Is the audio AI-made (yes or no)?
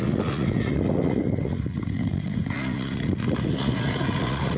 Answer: yes